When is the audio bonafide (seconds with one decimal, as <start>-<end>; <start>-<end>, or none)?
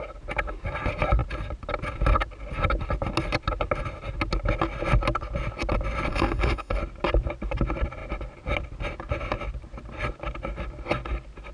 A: 0.0-6.1; 6.8-11.5